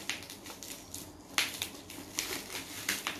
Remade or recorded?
recorded